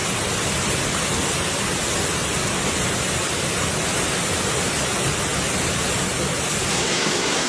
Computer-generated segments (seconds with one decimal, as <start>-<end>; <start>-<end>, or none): 6.7-7.5